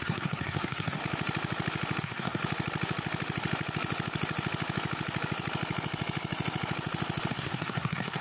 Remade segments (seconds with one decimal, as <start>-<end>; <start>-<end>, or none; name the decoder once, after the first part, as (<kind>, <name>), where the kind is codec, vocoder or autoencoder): 0.0-1.0 (codec, SNAC); 2.0-2.4; 7.3-8.2